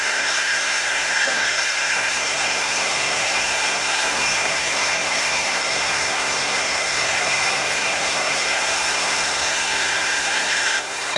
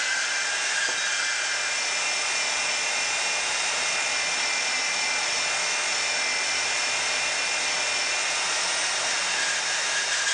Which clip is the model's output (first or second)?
first